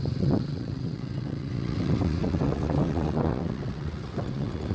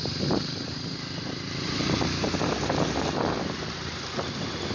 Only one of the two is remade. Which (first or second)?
first